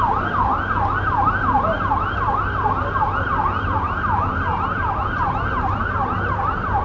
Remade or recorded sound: recorded